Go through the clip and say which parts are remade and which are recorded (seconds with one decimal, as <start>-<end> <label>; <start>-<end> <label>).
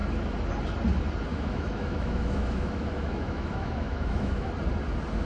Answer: 0.0-1.3 recorded; 1.3-4.5 remade; 4.5-5.3 recorded